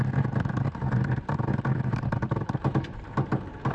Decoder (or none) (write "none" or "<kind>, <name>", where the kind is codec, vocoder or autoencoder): vocoder, BigVGAN v2